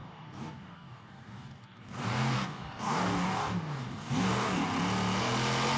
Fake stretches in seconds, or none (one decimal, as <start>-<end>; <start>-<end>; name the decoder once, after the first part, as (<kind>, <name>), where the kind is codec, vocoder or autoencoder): 0.0-4.6 (codec, DAC)